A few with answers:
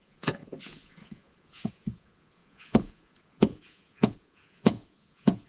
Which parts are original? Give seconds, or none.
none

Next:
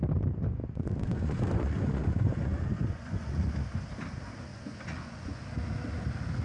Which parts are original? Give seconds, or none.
0.0-0.6; 3.8-4.5; 5.4-6.4

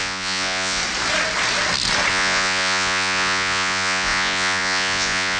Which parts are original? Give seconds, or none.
0.8-2.1

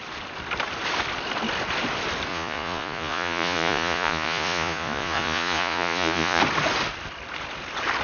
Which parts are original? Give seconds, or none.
0.0-2.3; 6.4-8.0